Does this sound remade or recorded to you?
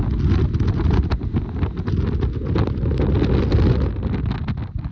recorded